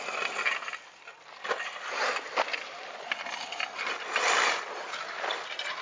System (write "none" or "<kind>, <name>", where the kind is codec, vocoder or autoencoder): none